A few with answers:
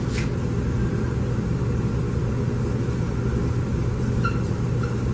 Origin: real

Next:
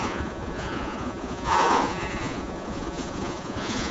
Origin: fake